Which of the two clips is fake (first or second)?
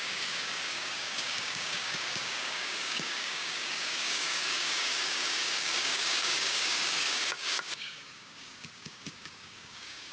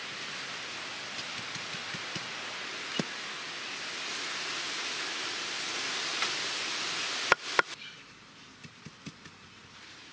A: first